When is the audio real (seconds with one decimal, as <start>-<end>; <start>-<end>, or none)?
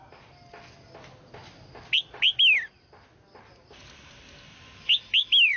0.0-5.6